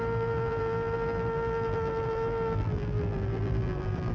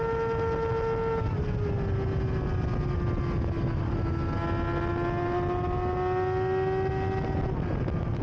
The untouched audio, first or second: second